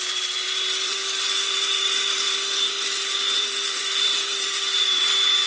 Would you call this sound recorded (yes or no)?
no